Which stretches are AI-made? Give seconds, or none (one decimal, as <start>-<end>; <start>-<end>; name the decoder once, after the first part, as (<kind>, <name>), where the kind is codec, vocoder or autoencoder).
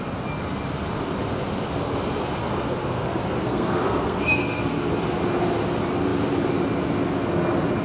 2.4-4.9 (codec, SNAC)